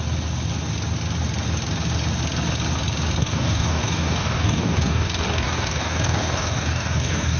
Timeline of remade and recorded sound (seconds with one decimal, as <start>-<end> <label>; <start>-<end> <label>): 0.0-3.2 recorded; 3.2-7.4 remade